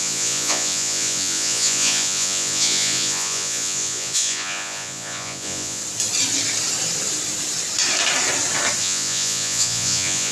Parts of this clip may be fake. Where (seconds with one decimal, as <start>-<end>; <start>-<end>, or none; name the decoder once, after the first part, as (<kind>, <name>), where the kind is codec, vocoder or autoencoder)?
0.0-5.8 (vocoder, Vocos); 8.8-10.3